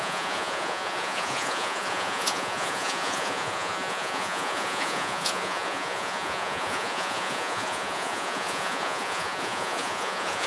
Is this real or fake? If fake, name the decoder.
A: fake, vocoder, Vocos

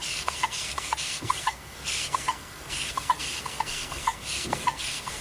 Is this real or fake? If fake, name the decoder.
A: fake, codec, SNAC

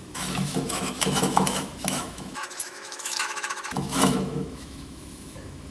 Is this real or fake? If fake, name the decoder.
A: fake, autoencoder, DAC-VAE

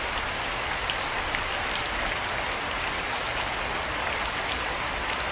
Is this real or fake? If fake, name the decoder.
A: real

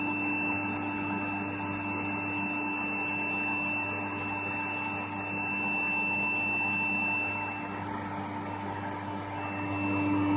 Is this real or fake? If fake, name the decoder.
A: real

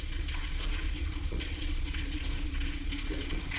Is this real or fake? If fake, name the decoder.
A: fake, vocoder, Vocos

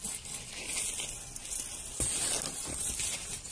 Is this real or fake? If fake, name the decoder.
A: real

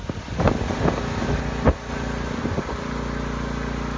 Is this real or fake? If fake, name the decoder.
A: real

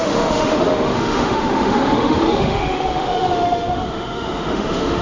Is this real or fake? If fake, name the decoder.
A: fake, autoencoder, DAC-VAE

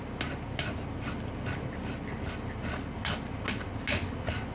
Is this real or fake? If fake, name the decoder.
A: real